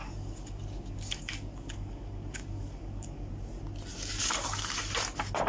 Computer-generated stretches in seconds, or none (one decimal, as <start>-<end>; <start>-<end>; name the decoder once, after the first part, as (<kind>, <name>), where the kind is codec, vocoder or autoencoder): 0.0-3.3 (codec, DAC); 3.9-4.8